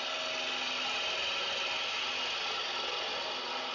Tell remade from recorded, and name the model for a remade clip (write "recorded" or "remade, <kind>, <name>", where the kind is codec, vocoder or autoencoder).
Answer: recorded